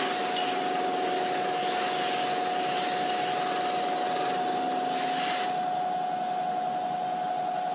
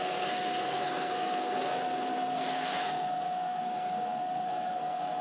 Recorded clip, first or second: first